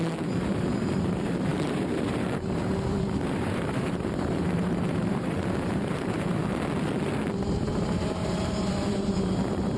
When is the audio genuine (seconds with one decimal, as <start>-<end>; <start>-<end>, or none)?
6.4-7.4

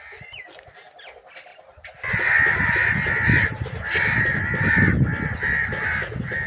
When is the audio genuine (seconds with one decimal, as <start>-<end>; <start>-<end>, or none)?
0.0-6.5